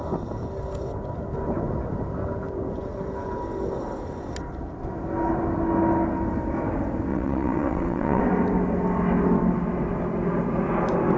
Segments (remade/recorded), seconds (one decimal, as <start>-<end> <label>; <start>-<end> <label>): 0.0-7.1 recorded; 7.1-8.2 remade; 8.2-11.2 recorded